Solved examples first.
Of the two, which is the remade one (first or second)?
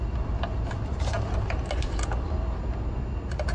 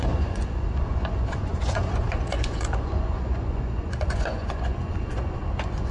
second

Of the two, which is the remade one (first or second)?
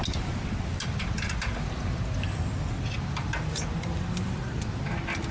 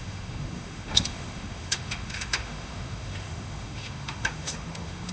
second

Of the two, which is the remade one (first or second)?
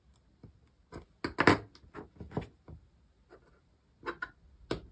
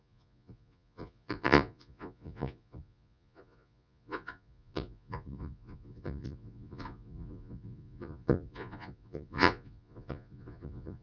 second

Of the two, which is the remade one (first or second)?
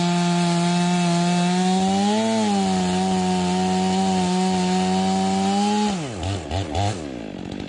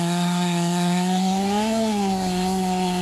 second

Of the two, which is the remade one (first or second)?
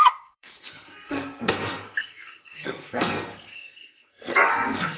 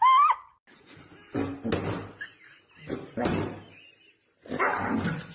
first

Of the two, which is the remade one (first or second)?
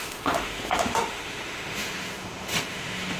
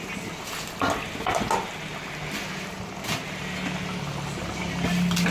first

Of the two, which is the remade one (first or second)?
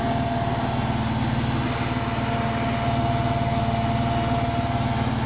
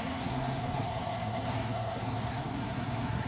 second